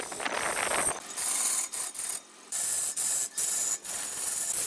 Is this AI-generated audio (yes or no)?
no